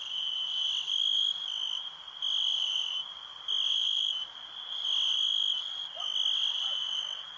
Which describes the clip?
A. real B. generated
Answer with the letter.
A